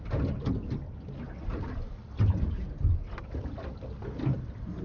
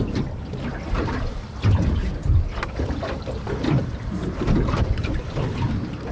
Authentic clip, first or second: first